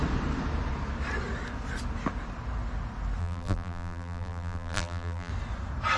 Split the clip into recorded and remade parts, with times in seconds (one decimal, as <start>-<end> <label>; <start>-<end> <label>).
0.0-3.2 recorded; 3.2-5.3 remade; 5.3-6.0 recorded